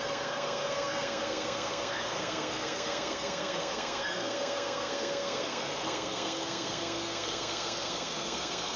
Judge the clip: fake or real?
fake